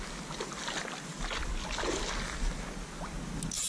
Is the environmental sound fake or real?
real